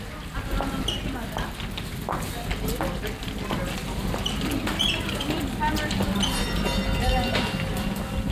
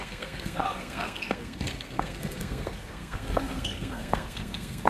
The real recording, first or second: first